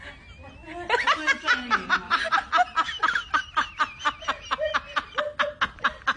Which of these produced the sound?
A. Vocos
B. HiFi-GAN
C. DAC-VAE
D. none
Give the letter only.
D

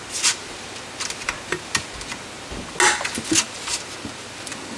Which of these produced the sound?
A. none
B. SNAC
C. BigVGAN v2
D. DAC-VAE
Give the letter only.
A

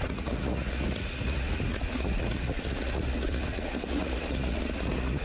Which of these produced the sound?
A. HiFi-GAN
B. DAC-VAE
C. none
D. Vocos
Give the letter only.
D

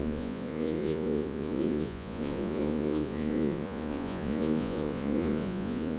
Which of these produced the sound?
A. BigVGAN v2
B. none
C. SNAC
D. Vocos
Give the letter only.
D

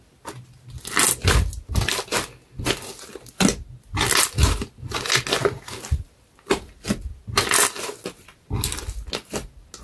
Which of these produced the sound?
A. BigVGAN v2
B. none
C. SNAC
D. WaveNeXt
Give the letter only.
B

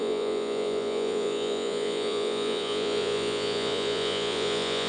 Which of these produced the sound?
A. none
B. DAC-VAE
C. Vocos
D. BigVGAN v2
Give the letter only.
C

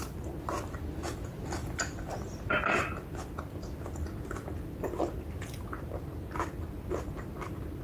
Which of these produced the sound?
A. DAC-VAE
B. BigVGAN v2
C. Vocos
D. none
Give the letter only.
D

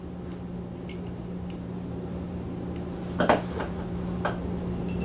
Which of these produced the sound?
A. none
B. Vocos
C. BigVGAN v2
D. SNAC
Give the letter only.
A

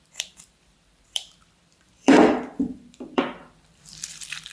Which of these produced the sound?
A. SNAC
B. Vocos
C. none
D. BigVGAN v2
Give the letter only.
D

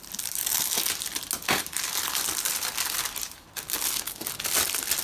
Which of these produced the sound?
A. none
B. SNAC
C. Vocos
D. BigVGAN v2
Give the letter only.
A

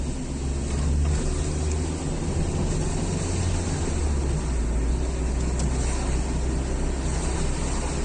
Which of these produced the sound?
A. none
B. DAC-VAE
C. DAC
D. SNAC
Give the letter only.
A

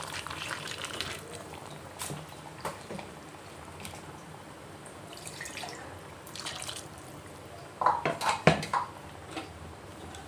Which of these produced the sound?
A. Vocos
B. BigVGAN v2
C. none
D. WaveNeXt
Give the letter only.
B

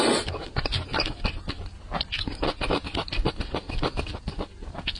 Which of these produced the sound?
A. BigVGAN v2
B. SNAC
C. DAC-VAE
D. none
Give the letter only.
D